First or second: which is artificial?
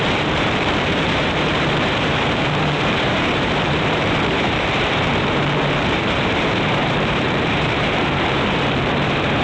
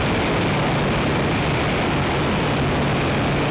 first